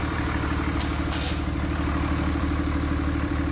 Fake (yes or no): yes